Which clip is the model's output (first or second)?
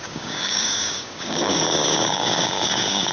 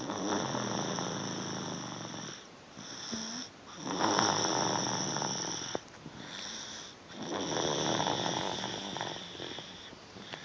first